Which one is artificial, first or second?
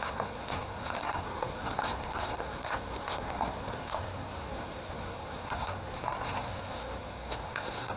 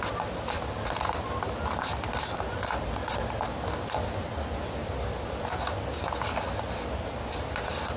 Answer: first